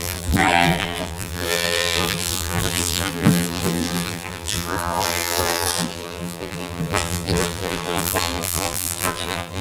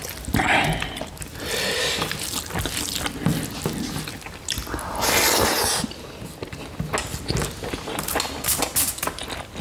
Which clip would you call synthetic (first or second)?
first